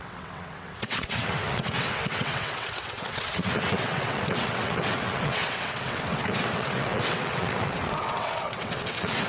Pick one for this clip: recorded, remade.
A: remade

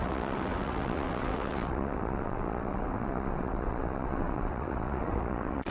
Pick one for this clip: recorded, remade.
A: remade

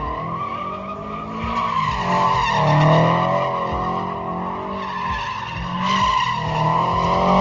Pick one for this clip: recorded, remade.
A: recorded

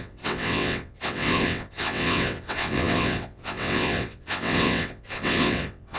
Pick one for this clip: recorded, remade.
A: remade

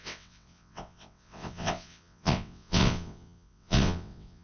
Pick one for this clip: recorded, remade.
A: remade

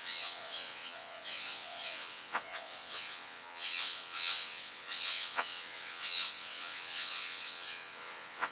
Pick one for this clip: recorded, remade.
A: remade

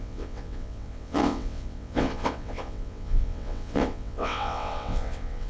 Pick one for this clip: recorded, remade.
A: remade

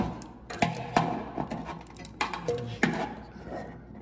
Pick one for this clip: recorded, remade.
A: recorded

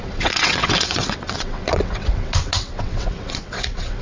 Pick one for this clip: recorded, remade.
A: remade